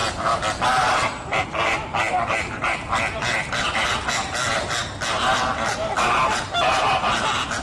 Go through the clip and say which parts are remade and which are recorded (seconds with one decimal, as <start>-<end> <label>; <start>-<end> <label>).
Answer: 0.0-7.6 recorded